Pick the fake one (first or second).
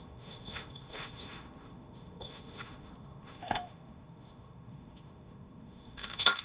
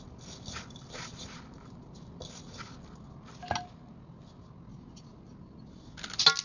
first